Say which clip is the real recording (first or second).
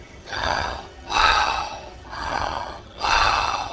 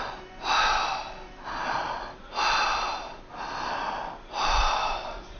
second